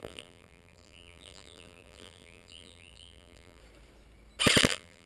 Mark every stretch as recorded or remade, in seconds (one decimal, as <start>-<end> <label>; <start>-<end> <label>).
0.0-3.6 remade; 3.6-4.6 recorded; 4.6-5.1 remade